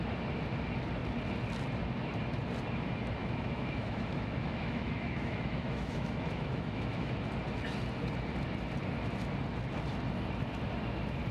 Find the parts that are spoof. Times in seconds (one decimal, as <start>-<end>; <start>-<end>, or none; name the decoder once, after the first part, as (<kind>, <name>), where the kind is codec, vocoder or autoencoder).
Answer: 3.2-7.2 (autoencoder, DAC-VAE)